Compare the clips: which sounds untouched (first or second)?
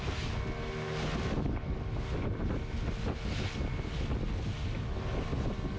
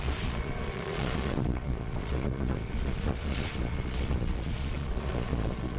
first